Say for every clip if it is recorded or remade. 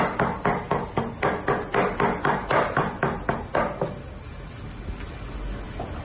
recorded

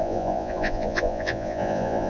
remade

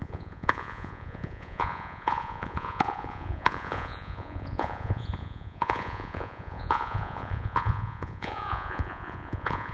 remade